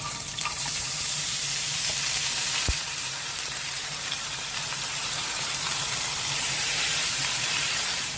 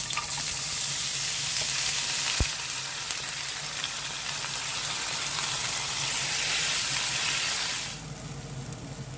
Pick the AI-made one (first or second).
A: first